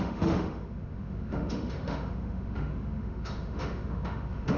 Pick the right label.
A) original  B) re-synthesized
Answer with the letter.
B